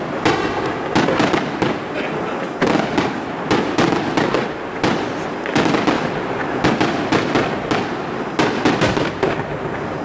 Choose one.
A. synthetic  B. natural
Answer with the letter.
B